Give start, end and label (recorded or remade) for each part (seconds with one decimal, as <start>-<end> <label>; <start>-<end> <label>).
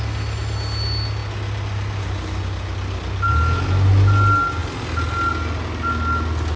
0.0-6.6 recorded